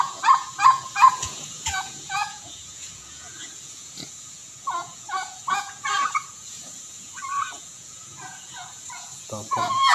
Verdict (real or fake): fake